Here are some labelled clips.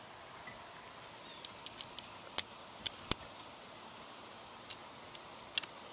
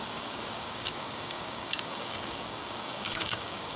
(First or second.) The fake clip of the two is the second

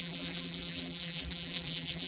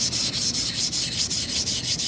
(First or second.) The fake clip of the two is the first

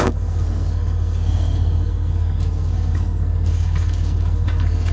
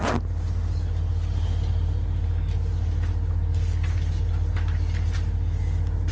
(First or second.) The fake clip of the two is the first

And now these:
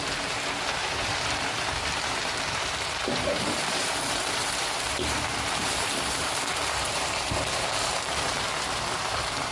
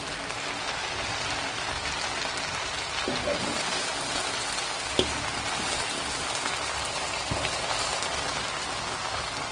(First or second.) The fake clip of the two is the first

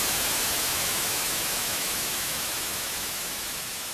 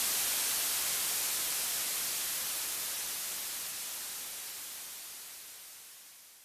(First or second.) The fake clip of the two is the first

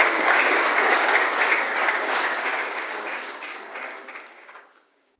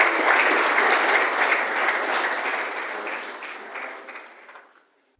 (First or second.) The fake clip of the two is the first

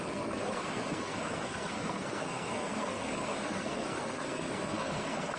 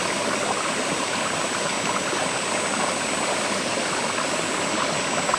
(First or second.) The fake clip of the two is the first